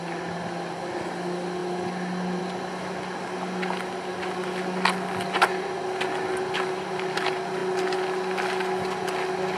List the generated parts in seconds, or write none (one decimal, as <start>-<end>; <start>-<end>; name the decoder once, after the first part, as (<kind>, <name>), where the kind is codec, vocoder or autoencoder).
none